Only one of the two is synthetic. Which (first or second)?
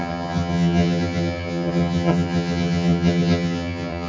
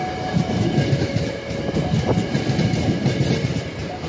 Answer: first